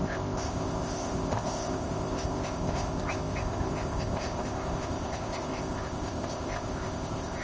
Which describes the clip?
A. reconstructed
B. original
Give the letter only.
A